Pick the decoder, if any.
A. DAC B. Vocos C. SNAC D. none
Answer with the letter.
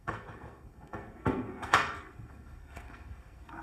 C